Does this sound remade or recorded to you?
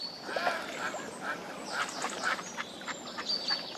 recorded